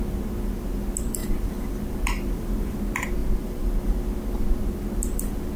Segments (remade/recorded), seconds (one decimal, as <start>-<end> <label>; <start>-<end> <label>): 0.0-1.2 recorded; 1.2-2.8 remade; 2.8-3.2 recorded; 3.2-3.8 remade; 3.8-5.6 recorded